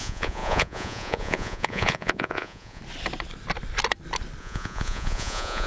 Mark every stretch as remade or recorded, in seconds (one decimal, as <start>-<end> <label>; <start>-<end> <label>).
0.0-2.8 remade; 2.8-4.4 recorded; 4.4-5.7 remade